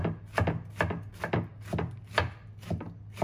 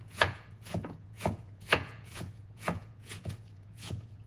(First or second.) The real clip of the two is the first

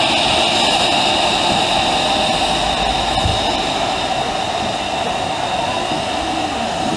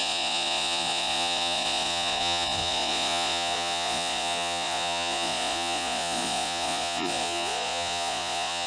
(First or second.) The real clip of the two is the first